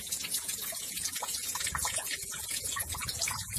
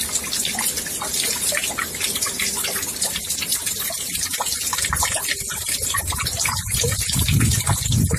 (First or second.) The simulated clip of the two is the first